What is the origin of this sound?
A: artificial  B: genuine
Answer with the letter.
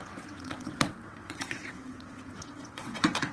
A